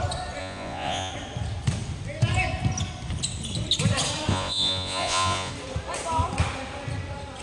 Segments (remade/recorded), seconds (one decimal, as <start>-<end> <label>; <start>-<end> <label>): 0.0-0.4 recorded; 0.4-1.1 remade; 1.1-4.3 recorded; 4.3-5.5 remade; 5.5-7.4 recorded